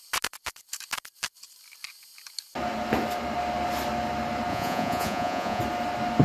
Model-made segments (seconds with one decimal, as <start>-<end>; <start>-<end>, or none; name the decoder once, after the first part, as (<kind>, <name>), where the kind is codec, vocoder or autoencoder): 4.5-5.6 (vocoder, Vocos)